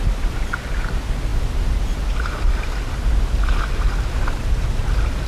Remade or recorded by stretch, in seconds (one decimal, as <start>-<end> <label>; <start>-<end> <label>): 0.0-5.3 recorded